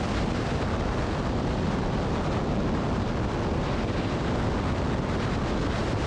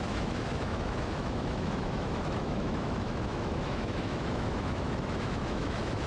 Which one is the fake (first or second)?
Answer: second